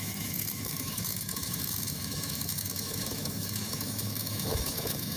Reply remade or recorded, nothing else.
remade